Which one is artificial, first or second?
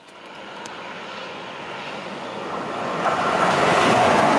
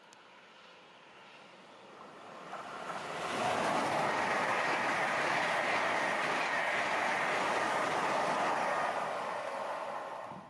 first